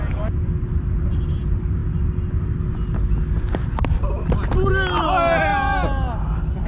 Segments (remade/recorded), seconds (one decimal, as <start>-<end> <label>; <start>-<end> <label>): 0.0-6.7 recorded